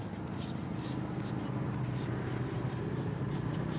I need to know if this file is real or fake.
real